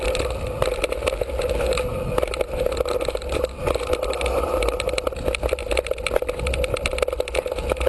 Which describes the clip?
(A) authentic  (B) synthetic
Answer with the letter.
A